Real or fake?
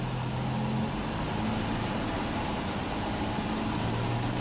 real